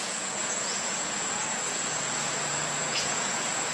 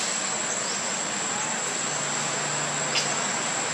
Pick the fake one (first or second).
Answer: first